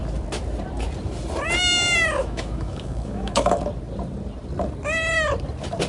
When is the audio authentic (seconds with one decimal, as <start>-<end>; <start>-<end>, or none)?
0.0-2.2; 3.6-5.9